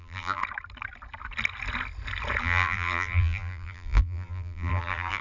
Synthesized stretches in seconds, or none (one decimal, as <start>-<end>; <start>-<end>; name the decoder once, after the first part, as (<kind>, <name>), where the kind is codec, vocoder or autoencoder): 0.0-0.4 (vocoder, BigVGAN v2); 2.4-5.2